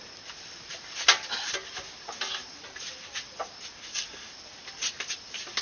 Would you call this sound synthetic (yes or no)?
no